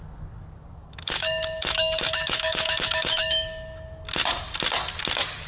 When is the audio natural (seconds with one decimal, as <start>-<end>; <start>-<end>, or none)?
0.0-0.7; 4.0-5.5